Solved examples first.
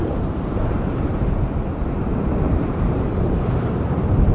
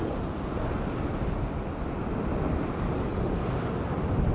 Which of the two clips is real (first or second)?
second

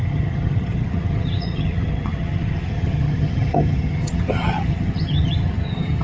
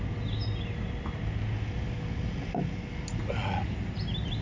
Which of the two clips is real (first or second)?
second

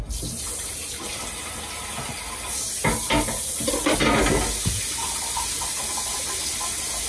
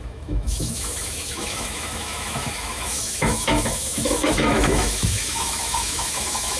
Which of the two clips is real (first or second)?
first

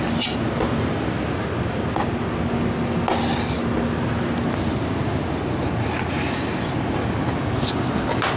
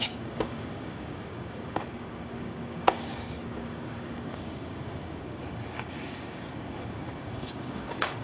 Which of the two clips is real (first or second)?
first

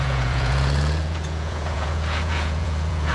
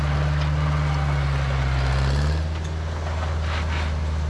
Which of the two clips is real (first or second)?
second